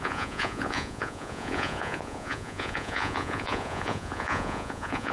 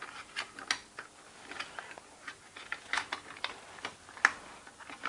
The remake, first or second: first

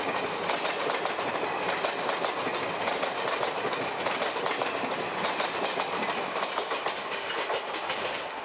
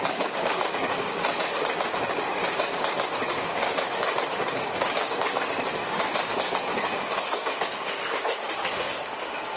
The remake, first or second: second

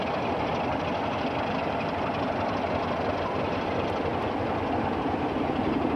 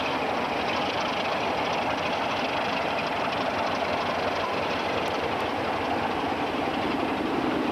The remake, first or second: second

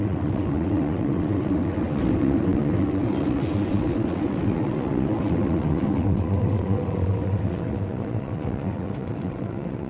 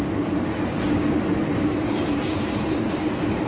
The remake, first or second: first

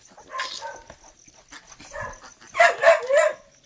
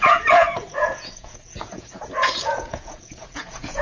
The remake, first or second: second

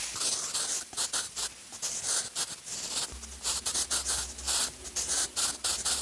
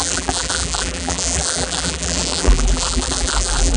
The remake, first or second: second